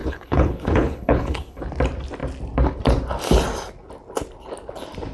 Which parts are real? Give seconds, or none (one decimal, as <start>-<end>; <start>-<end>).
1.6-5.1